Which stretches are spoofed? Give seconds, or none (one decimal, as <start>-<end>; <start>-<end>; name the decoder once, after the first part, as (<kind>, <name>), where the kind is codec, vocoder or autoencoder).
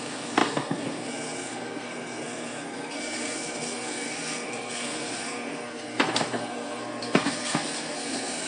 0.0-8.5 (codec, SNAC)